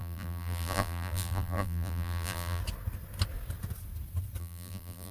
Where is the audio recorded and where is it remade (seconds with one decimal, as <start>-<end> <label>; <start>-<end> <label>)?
0.0-2.6 remade; 2.6-4.4 recorded; 4.4-5.1 remade